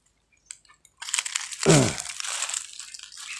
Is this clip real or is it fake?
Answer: real